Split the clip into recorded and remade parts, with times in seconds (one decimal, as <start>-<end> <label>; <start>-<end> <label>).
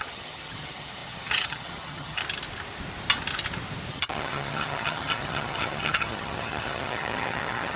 0.0-2.2 remade; 2.2-3.9 recorded; 3.9-7.8 remade